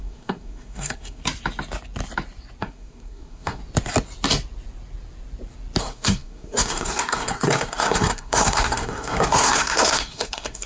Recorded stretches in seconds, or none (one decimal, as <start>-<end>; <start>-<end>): 1.2-2.6; 3.6-5.8